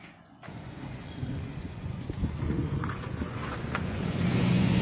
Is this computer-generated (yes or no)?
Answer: yes